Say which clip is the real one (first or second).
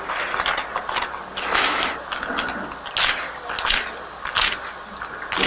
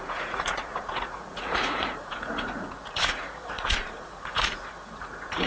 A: first